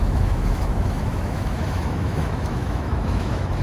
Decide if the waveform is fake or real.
fake